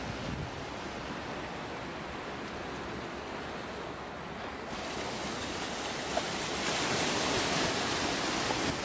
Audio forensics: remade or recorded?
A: recorded